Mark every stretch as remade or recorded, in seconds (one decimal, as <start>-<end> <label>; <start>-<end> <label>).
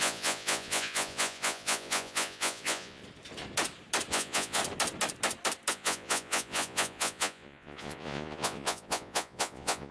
0.0-3.0 remade; 3.0-4.1 recorded; 4.1-4.6 remade; 4.6-5.7 recorded; 5.7-9.9 remade